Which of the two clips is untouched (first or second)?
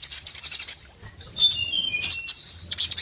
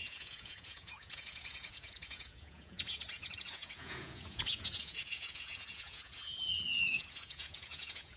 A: first